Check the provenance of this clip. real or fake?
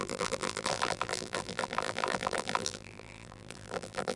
fake